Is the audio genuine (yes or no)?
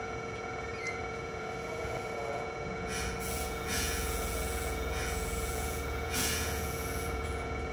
no